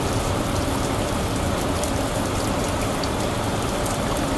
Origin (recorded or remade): recorded